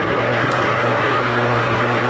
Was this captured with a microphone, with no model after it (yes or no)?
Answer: no